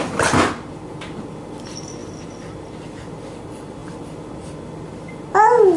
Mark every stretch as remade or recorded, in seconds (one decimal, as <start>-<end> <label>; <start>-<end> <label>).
0.0-5.8 recorded